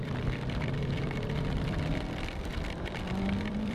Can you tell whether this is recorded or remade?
remade